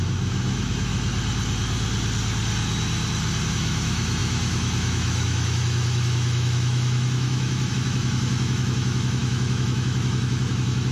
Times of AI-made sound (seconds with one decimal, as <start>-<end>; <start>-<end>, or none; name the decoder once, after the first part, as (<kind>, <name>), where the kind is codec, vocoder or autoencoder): 0.0-0.9 (autoencoder, DAC-VAE); 3.5-10.9